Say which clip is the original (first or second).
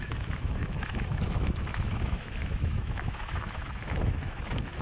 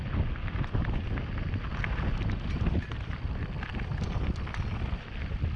second